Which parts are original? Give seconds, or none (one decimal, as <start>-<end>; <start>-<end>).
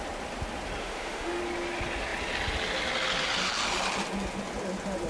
0.0-0.8; 1.4-5.1